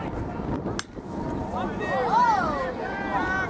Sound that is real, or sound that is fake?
real